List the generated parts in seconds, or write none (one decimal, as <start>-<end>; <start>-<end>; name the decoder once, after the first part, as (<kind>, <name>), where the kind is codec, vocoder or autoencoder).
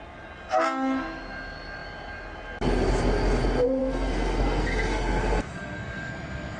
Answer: 3.8-6.1 (codec, SNAC)